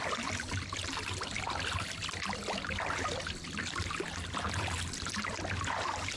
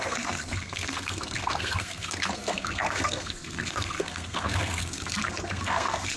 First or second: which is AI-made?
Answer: second